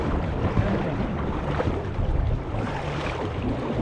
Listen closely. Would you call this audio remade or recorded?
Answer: remade